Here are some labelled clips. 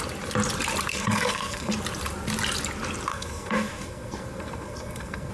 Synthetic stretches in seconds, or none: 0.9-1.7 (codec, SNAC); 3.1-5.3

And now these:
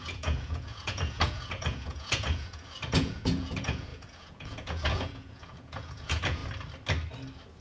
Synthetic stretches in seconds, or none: 0.0-6.4 (vocoder, Vocos)

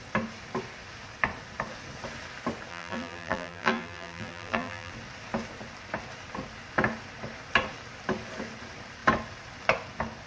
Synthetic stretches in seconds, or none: 2.7-4.9 (vocoder, BigVGAN v2)